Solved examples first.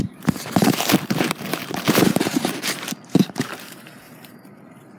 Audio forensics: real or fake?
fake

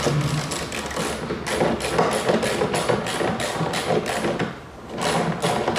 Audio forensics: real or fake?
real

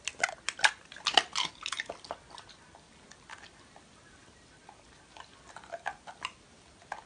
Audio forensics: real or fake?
real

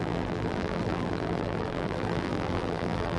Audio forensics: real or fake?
fake